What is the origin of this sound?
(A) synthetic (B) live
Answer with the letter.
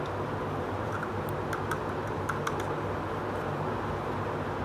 B